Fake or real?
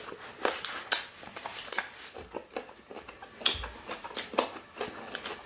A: real